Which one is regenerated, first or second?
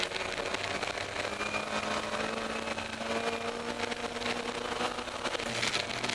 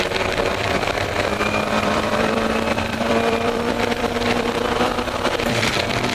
second